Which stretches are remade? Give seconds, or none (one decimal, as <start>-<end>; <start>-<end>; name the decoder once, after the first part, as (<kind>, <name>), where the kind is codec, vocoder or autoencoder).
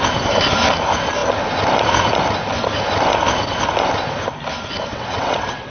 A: 4.9-5.7 (vocoder, WaveNeXt)